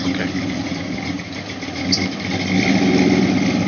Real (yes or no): yes